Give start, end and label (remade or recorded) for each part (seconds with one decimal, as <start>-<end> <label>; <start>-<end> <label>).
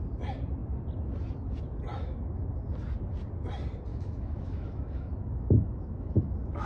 0.0-1.9 recorded; 1.9-2.4 remade; 2.4-3.9 recorded; 3.9-6.7 remade